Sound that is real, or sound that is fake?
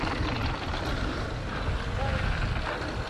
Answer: real